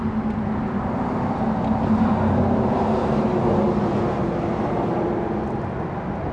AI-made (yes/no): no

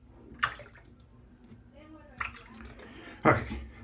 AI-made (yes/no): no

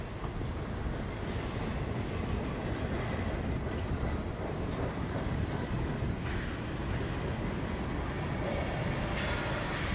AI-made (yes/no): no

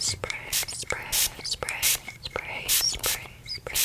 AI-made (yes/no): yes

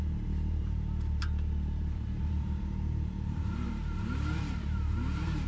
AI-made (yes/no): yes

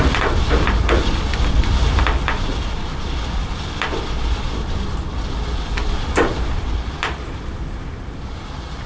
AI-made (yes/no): yes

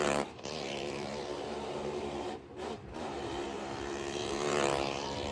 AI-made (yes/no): yes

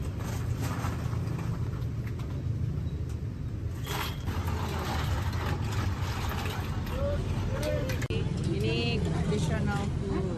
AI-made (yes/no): no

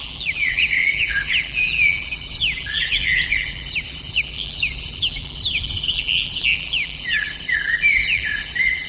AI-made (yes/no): yes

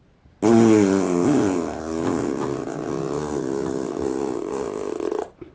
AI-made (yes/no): no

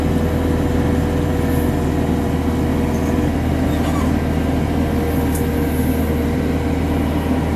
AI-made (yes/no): no